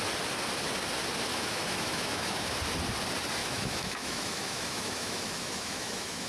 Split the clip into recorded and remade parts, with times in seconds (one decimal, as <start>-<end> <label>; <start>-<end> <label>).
0.0-1.3 recorded; 1.3-2.6 remade; 2.6-3.4 recorded; 3.4-6.3 remade